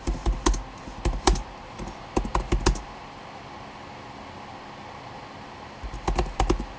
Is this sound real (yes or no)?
yes